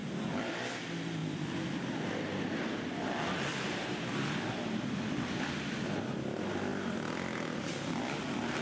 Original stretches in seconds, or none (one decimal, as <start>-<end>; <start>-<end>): 0.0-8.6